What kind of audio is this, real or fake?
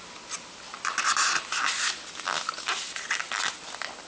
real